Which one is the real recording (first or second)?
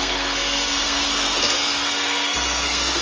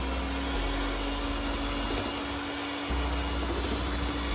second